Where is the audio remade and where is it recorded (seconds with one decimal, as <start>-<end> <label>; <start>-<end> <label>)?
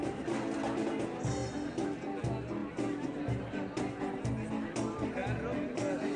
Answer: 0.0-6.2 recorded